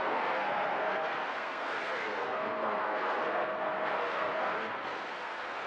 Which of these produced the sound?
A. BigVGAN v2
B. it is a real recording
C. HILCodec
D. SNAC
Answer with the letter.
D